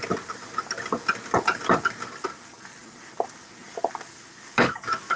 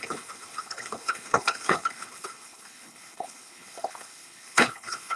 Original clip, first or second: first